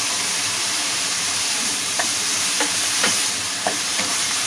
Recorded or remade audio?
remade